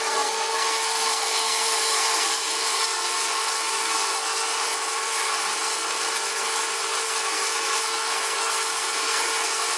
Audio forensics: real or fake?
fake